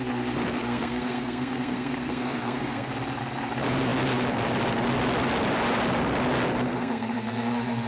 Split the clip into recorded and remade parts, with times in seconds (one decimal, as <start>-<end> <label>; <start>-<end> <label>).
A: 0.0-0.6 recorded; 0.6-2.9 remade; 2.9-6.7 recorded; 6.7-7.9 remade

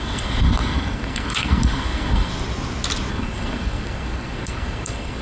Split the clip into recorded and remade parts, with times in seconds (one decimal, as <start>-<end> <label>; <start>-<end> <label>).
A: 0.0-2.3 remade; 2.3-3.1 recorded; 3.1-5.2 remade

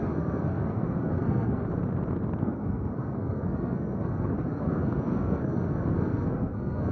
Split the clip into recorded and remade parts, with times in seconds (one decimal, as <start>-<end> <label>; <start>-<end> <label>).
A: 0.0-1.6 remade; 1.6-2.4 recorded; 2.4-6.9 remade

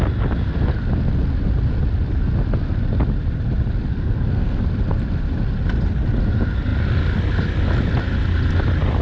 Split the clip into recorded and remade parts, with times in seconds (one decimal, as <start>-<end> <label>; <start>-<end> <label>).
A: 0.0-3.9 recorded; 3.9-4.6 remade; 4.6-9.0 recorded

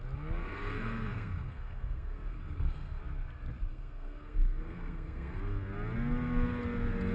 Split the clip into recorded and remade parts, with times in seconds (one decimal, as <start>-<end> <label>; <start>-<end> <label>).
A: 0.0-0.4 recorded; 0.4-3.0 remade; 3.0-3.7 recorded; 3.7-5.4 remade; 5.4-7.1 recorded

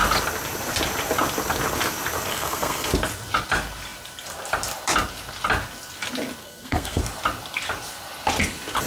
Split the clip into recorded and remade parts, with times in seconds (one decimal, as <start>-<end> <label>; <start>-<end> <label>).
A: 0.0-2.3 recorded; 2.3-2.9 remade; 2.9-6.4 recorded; 6.4-7.0 remade; 7.0-8.9 recorded